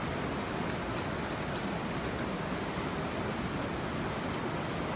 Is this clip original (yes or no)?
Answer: yes